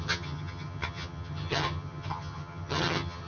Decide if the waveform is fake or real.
fake